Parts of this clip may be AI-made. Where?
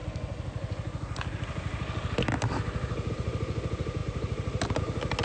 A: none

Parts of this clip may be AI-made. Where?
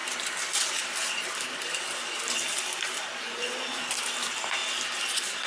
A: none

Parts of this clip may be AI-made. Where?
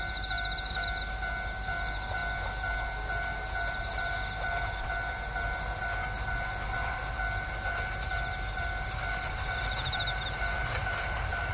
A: none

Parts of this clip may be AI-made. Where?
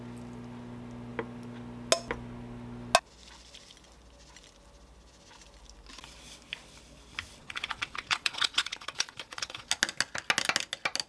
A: 7.4-9.7 (vocoder, Vocos)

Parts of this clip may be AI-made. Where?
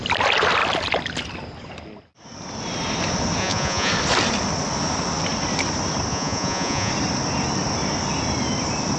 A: 3.4-3.9 (vocoder, Vocos); 6.1-6.9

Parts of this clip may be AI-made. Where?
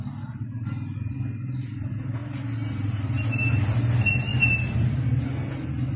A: none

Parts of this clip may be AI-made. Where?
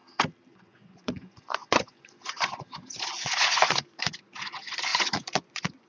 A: 0.5-5.9 (vocoder, Vocos)